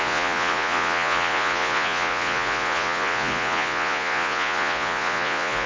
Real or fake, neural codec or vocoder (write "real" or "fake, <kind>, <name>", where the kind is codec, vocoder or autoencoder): fake, vocoder, Vocos